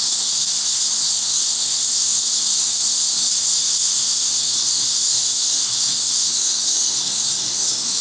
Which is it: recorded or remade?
remade